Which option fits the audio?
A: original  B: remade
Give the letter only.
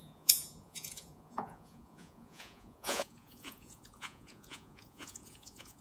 B